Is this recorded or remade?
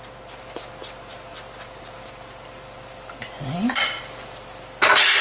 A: recorded